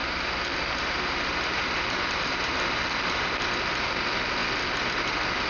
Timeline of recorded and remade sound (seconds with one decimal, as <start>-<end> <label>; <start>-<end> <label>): 0.0-3.3 remade; 3.3-5.5 recorded